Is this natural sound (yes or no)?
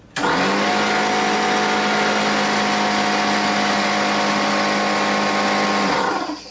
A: yes